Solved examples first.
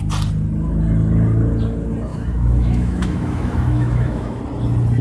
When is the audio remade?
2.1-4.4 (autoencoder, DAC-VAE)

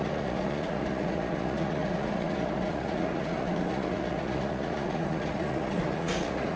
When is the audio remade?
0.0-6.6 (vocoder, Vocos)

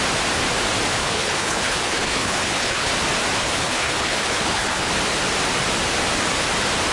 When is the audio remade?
1.0-2.9 (codec, HILCodec); 3.4-4.9

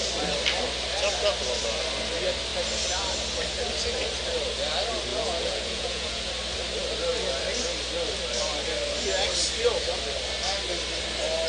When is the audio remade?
5.1-6.3 (vocoder, Vocos)